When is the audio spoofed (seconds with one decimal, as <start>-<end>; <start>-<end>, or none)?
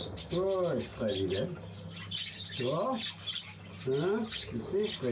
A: none